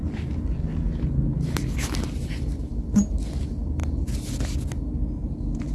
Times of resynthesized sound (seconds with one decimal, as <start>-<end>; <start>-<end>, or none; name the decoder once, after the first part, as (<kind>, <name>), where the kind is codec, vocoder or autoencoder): none